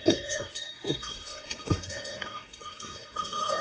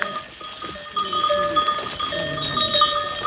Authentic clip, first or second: second